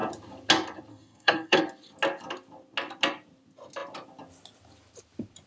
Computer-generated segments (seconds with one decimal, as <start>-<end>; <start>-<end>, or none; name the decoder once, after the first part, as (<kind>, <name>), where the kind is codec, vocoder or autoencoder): 0.9-1.6 (codec, SNAC)